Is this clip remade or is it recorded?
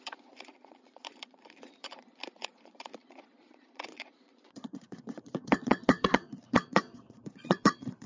remade